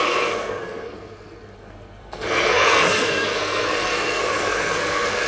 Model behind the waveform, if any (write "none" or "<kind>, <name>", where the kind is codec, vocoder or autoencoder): codec, SNAC